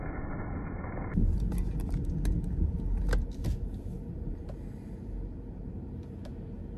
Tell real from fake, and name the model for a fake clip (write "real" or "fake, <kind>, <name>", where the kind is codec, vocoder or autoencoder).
real